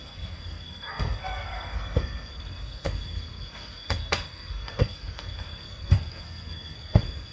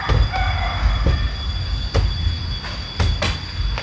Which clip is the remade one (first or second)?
first